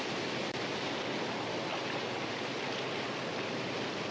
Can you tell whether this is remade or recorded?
recorded